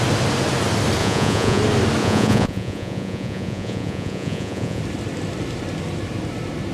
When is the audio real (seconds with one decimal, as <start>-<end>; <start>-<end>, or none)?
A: 0.0-1.0; 1.6-2.0; 4.8-6.7